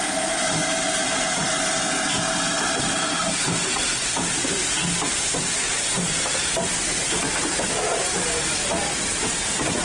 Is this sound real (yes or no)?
yes